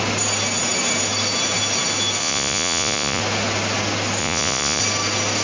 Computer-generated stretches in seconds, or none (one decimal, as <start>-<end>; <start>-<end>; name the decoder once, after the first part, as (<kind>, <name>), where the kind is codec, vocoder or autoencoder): 2.2-3.2 (vocoder, Vocos); 4.2-4.8

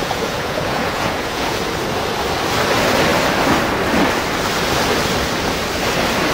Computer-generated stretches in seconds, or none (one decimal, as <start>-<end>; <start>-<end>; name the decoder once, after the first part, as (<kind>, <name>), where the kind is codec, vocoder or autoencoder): 0.0-1.6 (vocoder, Vocos)